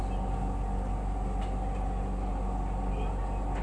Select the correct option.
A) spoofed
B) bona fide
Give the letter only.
B